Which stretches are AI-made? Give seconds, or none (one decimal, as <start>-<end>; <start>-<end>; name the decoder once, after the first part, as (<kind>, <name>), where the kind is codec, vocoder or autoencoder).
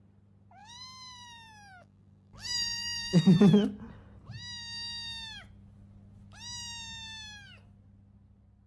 0.6-3.2 (vocoder, BigVGAN v2)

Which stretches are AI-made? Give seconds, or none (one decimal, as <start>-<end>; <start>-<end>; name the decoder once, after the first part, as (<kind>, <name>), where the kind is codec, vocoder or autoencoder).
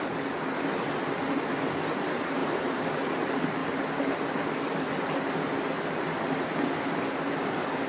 none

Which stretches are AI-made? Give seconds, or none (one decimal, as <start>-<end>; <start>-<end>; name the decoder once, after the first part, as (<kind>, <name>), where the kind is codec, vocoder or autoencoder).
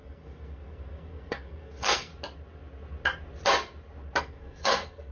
0.0-2.1 (codec, SNAC); 4.2-5.1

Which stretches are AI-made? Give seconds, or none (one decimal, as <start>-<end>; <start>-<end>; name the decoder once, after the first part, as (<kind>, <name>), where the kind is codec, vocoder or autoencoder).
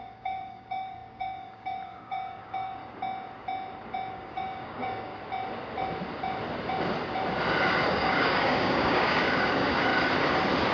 0.0-2.8 (codec, DAC); 4.1-5.1; 7.9-9.9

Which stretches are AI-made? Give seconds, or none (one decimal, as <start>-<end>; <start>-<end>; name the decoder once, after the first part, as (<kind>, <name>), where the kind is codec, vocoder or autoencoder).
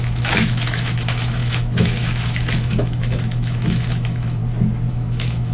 0.0-4.4 (autoencoder, DAC-VAE); 4.9-5.5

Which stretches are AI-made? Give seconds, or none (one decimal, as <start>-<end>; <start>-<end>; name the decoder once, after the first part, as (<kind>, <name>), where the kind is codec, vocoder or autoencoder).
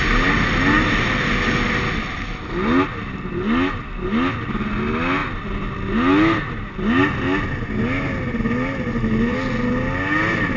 none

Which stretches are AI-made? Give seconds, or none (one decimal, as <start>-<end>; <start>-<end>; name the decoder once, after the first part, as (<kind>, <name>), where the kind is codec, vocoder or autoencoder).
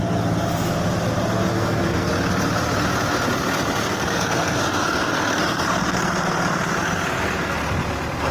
1.5-2.1 (codec, SNAC); 3.8-7.6